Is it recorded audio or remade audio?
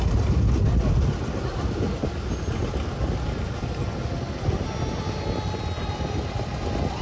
recorded